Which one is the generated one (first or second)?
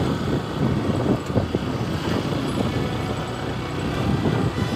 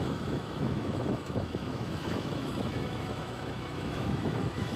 second